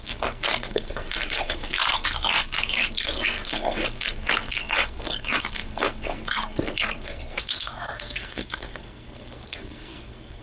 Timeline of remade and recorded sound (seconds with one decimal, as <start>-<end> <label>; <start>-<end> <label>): 0.0-10.4 remade

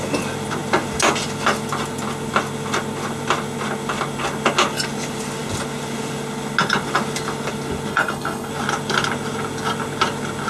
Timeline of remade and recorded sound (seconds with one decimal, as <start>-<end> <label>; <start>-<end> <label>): 0.0-7.9 recorded; 7.9-8.5 remade; 8.5-10.5 recorded

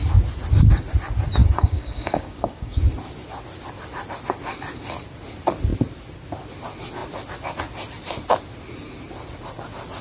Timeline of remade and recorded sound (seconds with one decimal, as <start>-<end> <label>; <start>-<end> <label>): 0.0-1.4 recorded; 1.4-2.8 remade; 2.8-10.0 recorded

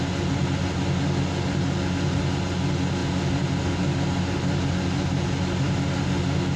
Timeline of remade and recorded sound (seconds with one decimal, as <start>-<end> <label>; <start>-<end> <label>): 0.0-6.6 recorded

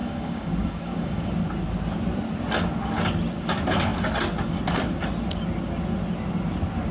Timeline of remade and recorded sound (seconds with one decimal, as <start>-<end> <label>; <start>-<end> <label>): 0.0-1.3 remade; 1.3-6.9 recorded

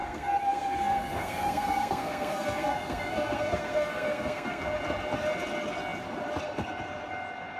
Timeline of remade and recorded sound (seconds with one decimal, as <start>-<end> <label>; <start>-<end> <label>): 0.0-4.6 remade; 4.6-7.6 recorded

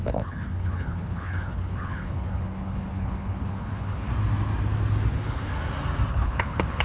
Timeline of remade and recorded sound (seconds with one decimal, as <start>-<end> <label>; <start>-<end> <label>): 0.0-4.1 remade; 4.1-5.1 recorded; 5.1-5.5 remade; 5.5-6.1 recorded; 6.1-6.8 remade